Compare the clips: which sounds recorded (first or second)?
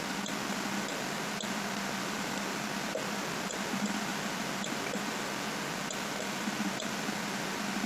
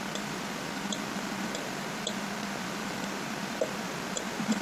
first